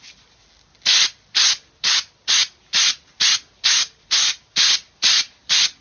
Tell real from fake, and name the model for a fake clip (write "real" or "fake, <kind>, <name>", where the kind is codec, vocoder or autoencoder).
real